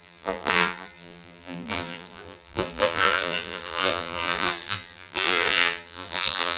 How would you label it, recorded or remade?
remade